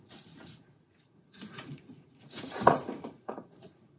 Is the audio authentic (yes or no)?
no